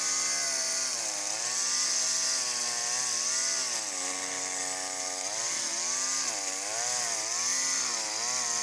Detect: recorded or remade recorded